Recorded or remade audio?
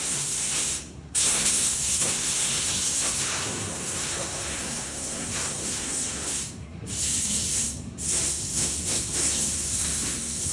remade